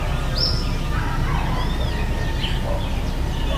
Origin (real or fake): real